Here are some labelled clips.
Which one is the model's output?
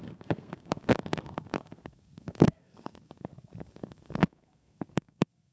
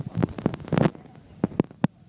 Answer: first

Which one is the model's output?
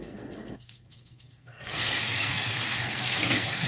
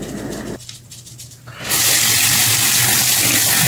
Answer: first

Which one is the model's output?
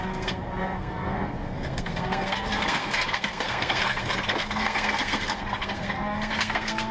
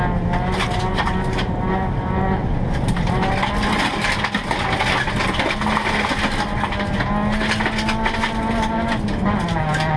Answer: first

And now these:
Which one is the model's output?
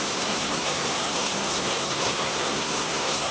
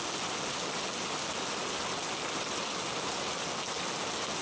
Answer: first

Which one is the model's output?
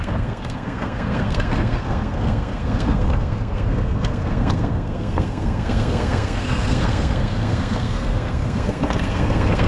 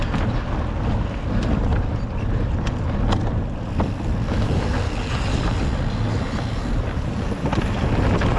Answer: first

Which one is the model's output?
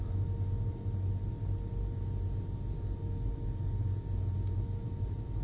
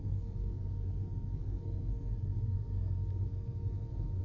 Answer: second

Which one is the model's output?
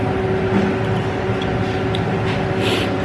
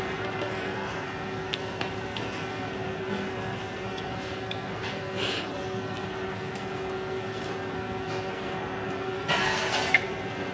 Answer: second